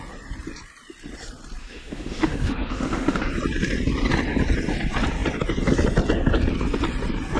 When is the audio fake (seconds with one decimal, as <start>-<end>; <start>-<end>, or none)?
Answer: 1.6-3.3